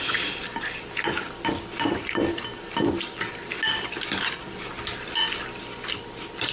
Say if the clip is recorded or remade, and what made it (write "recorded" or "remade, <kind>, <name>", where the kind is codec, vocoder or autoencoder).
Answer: recorded